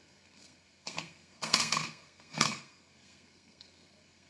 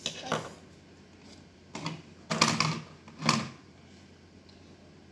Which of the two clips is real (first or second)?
second